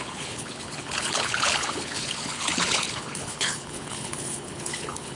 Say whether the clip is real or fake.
fake